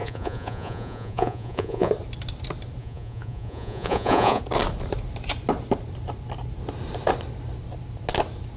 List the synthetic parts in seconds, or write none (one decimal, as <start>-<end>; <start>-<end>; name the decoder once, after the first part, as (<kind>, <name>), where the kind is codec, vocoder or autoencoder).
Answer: 0.0-1.9 (vocoder, Vocos); 2.8-4.4